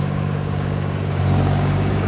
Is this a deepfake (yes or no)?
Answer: yes